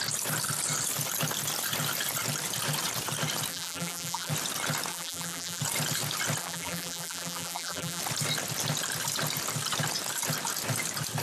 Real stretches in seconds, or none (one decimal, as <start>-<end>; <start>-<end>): 0.0-3.5; 4.3-4.9; 5.6-6.4; 8.0-11.2

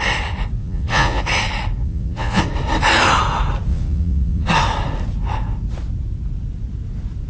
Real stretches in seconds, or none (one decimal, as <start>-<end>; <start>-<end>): 0.0-0.6; 1.2-1.8; 2.4-3.7; 4.5-7.3

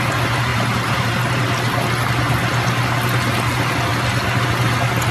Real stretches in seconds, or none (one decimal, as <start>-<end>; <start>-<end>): 0.0-0.5; 1.4-5.1

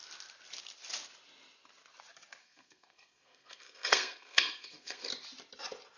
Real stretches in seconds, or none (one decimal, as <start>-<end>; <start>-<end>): 0.0-2.4; 5.1-6.0

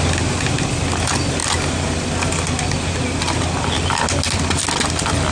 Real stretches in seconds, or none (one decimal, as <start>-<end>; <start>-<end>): 0.0-5.3